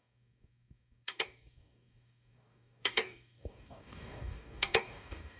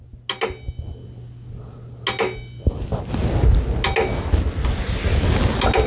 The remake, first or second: first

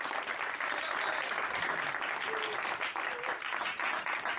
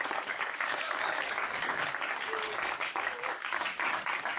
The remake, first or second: second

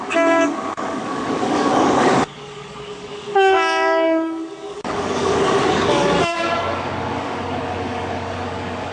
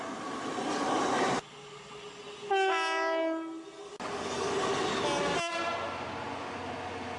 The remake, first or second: first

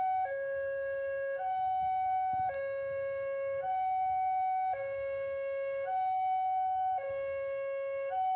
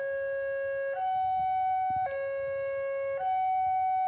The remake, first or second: first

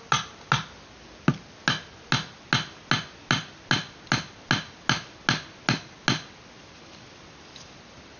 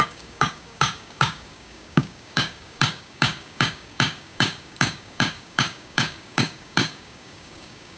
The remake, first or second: second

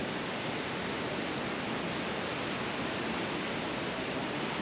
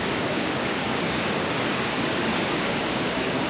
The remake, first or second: second